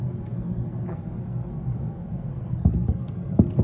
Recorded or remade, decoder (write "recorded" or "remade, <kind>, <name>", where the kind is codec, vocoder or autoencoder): remade, codec, SNAC